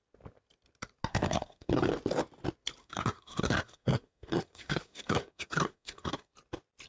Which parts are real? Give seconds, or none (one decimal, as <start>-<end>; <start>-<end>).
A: 0.0-1.1; 1.9-2.8; 6.3-6.9